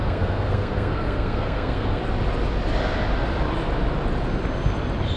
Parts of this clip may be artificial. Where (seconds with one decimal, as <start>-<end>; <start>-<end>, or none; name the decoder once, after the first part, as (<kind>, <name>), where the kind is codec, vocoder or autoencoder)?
0.0-2.0 (codec, SNAC)